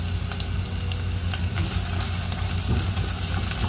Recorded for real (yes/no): yes